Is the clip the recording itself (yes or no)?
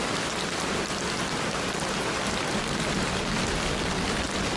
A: yes